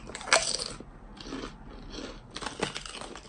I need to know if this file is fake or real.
real